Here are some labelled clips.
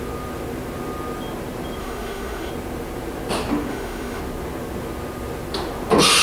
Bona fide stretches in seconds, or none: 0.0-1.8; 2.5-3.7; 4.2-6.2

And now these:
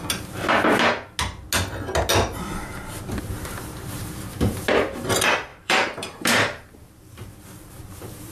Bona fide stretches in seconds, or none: 0.0-5.5